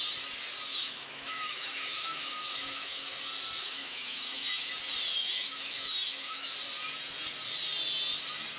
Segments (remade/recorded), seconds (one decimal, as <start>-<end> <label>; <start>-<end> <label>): 0.0-0.7 recorded; 0.7-3.2 remade; 3.2-3.6 recorded; 3.6-4.7 remade; 4.7-5.2 recorded; 5.2-6.5 remade; 6.5-8.6 recorded